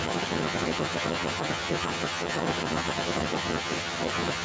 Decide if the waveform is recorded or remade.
remade